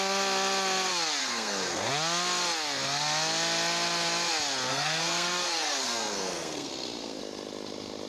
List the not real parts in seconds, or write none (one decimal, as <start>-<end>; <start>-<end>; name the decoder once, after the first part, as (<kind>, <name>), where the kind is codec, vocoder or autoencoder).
1.2-1.9 (codec, SNAC); 4.7-7.2